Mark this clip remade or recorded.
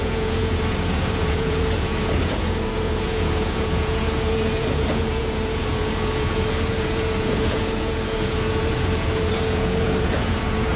remade